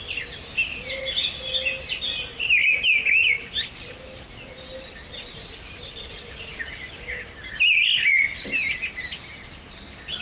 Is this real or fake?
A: real